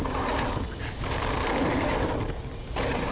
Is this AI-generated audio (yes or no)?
no